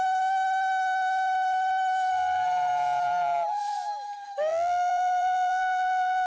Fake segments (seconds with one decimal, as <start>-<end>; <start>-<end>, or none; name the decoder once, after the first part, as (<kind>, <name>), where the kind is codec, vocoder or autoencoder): 4.5-6.3 (vocoder, BigVGAN v2)